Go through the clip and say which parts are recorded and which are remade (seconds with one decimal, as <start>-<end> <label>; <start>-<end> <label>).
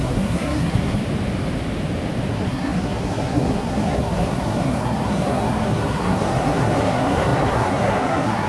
0.0-1.0 remade; 1.0-2.3 recorded; 2.3-8.5 remade